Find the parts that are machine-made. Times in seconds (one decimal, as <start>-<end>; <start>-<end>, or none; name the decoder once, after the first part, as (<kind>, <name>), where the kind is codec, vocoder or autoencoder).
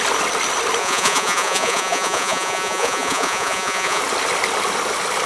0.8-4.0 (vocoder, Vocos)